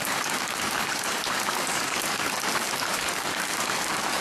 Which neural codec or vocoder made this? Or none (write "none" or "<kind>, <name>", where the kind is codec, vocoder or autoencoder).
codec, DAC